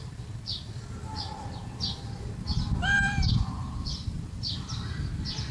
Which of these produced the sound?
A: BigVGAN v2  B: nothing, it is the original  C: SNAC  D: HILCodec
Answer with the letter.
A